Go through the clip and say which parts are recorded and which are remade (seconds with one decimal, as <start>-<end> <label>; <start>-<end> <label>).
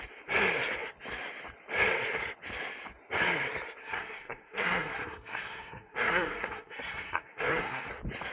0.0-3.8 recorded; 3.8-7.9 remade; 7.9-8.3 recorded